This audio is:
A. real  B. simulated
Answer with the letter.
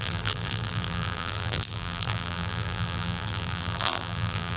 B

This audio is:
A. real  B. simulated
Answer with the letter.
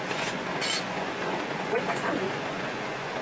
B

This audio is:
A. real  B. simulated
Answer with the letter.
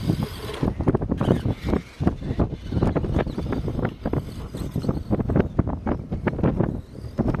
A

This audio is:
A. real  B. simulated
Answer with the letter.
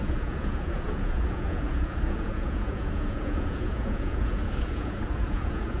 B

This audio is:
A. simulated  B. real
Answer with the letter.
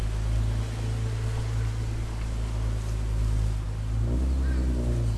B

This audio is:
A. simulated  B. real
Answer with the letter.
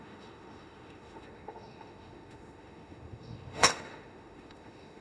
A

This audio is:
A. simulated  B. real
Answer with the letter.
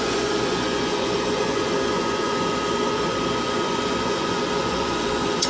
A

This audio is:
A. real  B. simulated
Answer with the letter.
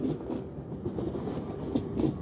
A